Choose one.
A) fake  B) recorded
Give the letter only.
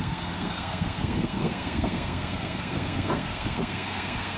A